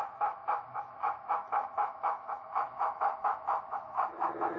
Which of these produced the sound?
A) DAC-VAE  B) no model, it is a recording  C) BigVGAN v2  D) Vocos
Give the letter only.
A